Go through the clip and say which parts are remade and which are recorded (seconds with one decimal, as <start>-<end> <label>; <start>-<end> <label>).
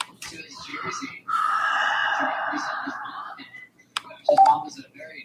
0.0-5.2 remade